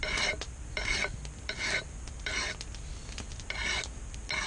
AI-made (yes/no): yes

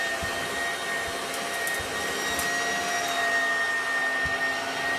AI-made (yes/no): no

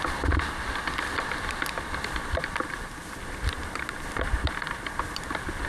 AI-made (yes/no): no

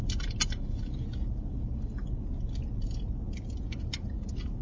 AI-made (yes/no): no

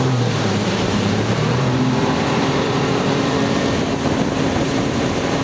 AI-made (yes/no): yes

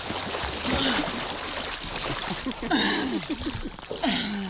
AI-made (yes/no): no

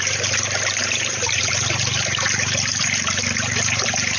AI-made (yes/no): yes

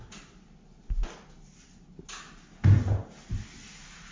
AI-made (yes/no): no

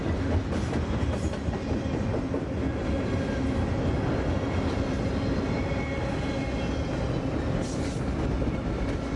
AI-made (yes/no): no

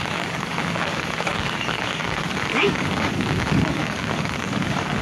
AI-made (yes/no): yes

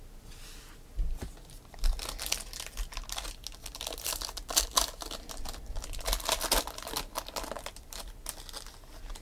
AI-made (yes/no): no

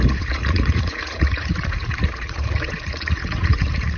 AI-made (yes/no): yes